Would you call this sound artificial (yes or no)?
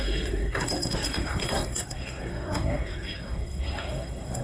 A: yes